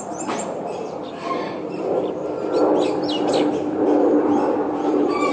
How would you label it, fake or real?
real